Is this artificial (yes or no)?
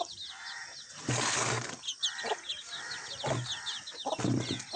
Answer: no